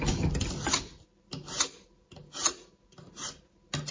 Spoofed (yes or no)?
no